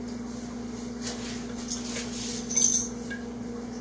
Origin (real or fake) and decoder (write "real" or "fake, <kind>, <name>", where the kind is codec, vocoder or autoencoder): real